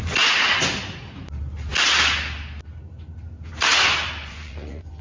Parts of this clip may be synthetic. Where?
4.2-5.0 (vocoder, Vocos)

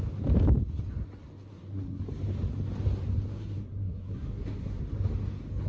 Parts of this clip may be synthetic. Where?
1.5-2.0 (codec, SNAC); 3.3-4.8

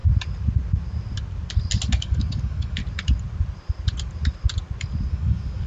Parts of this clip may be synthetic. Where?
1.9-2.8 (codec, DAC); 5.1-5.7

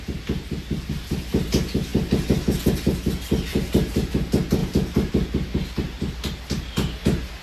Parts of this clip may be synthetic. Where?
3.5-4.1 (vocoder, BigVGAN v2); 4.6-5.1